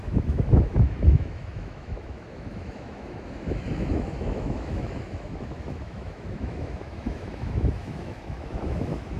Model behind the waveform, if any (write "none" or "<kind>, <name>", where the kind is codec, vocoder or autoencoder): autoencoder, DAC-VAE